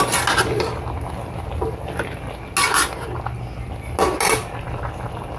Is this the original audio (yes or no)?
yes